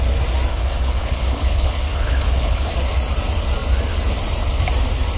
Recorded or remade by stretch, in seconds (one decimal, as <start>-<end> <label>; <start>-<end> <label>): 0.0-0.5 recorded; 0.5-2.7 remade; 2.7-5.2 recorded